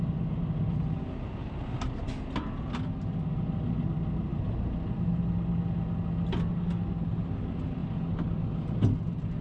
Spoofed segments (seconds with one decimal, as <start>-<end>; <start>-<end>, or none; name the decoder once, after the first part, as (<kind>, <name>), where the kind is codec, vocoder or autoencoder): none